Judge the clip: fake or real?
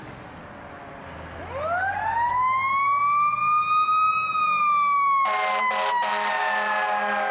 real